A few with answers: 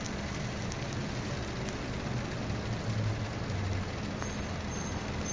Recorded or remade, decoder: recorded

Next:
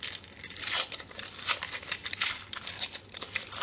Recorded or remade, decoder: recorded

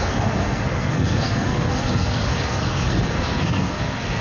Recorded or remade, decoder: remade, codec, SNAC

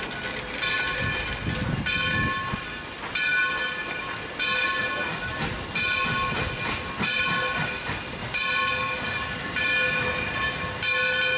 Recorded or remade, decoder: recorded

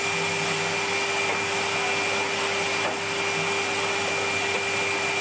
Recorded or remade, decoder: recorded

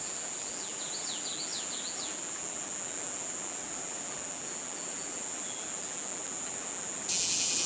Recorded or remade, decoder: remade, vocoder, BigVGAN v2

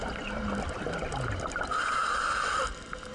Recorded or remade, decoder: recorded